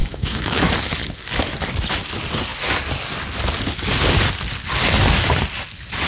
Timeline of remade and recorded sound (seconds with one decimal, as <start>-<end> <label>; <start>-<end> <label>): 0.0-0.7 remade; 0.7-6.1 recorded